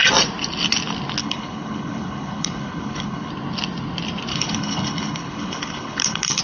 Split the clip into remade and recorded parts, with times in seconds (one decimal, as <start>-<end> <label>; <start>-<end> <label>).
0.0-1.2 recorded; 1.2-3.3 remade; 3.3-4.3 recorded; 4.3-6.4 remade